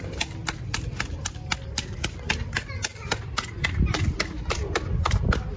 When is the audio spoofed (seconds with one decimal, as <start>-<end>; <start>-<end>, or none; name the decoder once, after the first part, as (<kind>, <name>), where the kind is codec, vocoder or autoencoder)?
none